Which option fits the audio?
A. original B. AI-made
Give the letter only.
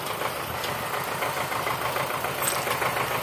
A